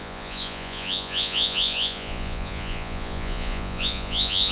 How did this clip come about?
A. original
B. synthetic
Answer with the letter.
B